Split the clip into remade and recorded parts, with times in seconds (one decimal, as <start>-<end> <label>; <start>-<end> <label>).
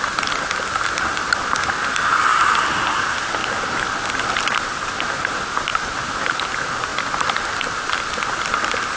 0.0-9.0 recorded